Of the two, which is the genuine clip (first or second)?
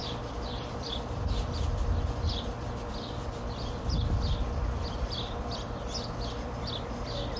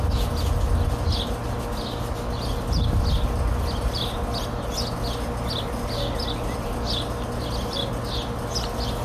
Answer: second